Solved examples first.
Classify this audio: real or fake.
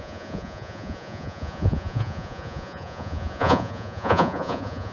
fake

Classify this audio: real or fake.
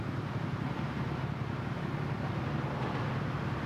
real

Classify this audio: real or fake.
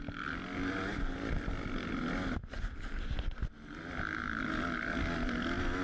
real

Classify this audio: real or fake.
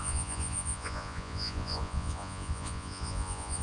fake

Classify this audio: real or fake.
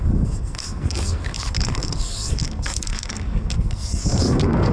fake